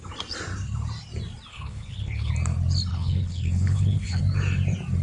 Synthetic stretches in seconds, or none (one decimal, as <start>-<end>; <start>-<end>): 1.5-2.3; 2.9-4.2